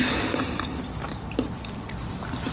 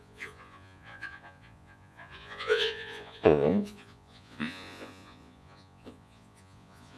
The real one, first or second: first